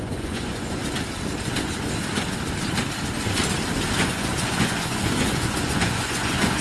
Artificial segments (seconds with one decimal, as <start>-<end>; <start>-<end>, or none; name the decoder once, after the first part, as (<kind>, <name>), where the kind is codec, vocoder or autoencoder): 0.0-0.8 (vocoder, Vocos); 4.0-6.6